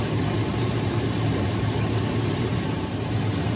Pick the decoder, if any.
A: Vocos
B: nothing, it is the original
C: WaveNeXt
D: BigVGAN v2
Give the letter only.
D